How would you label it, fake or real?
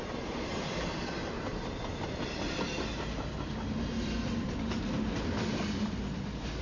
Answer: real